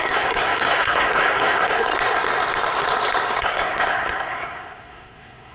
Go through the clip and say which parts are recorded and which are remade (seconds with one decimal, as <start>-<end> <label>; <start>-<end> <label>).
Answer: 0.0-1.9 remade; 1.9-3.4 recorded; 3.4-5.5 remade

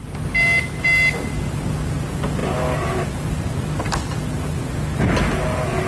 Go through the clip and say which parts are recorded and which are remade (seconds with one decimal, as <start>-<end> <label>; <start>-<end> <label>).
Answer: 0.0-5.9 recorded

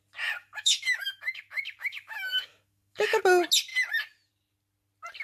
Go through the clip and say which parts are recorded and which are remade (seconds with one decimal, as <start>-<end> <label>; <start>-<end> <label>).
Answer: 0.0-0.4 recorded; 0.4-3.2 remade; 3.2-5.2 recorded

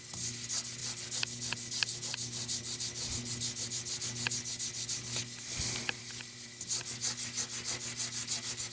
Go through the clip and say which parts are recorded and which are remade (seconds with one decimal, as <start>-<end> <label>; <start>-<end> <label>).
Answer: 0.0-8.7 recorded